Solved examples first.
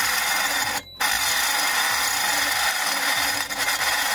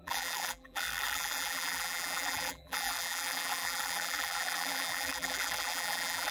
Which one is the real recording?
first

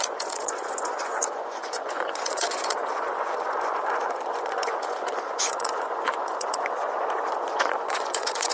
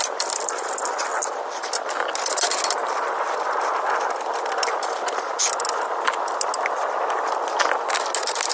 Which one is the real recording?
second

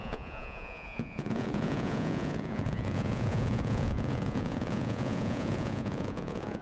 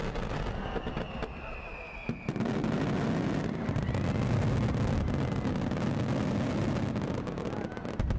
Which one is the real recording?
second